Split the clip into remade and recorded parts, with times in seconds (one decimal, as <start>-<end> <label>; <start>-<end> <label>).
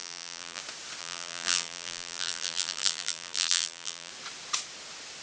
0.0-0.6 remade; 0.6-1.0 recorded; 1.0-4.1 remade; 4.1-5.2 recorded